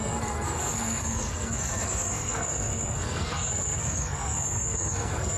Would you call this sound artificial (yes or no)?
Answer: yes